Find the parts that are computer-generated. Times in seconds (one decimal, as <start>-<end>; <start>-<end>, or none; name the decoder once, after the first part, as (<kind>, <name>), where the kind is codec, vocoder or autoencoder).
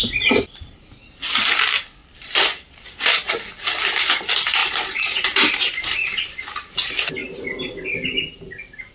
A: 2.0-3.3 (vocoder, BigVGAN v2); 4.6-6.7; 7.2-7.7